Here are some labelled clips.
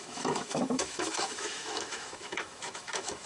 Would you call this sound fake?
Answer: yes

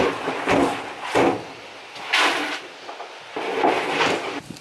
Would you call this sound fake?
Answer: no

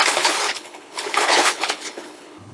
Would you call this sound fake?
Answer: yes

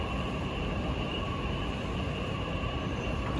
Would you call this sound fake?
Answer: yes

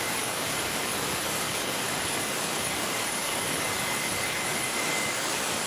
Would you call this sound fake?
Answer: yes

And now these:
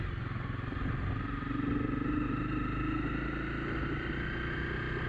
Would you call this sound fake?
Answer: no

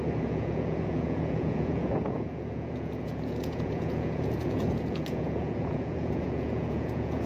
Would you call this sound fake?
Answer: yes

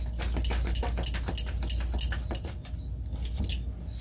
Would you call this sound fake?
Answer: no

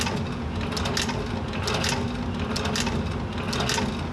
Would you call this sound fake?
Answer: no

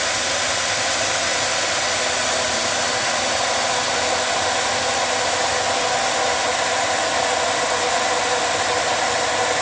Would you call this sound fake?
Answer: no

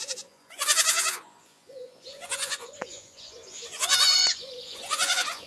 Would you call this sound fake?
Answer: yes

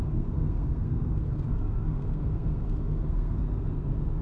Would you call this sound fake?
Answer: yes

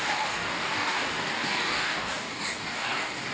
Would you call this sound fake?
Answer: yes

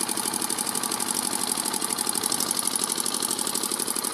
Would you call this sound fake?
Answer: no